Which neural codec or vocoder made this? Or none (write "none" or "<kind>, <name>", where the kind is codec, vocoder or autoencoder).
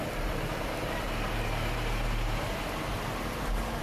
vocoder, BigVGAN v2